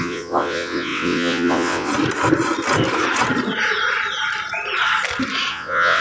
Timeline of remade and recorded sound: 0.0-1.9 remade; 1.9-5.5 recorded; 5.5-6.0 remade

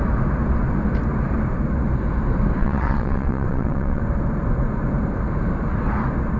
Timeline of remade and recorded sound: 0.0-2.6 recorded; 2.6-4.0 remade; 4.0-6.4 recorded

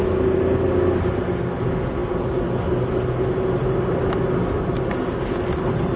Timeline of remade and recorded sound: 0.0-6.0 recorded

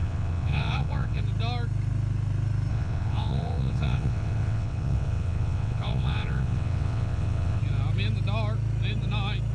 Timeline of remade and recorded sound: 0.0-1.2 remade; 1.2-2.7 recorded; 2.7-7.6 remade; 7.6-9.5 recorded

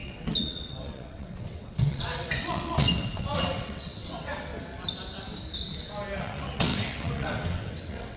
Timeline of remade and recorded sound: 0.0-4.5 remade; 4.5-6.2 recorded; 6.2-8.2 remade

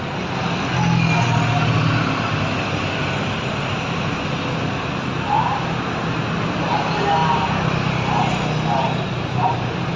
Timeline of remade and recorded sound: 0.0-10.0 recorded